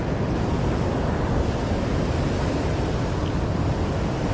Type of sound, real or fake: real